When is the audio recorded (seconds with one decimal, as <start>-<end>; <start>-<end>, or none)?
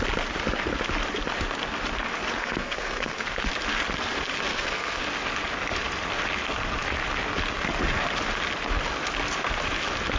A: 0.0-2.4; 3.5-4.5; 5.0-10.2